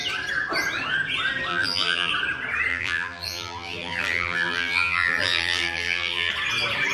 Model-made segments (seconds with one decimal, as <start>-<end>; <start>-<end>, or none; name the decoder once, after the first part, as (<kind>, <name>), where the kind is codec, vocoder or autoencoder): 1.5-2.1 (vocoder, BigVGAN v2); 2.7-6.3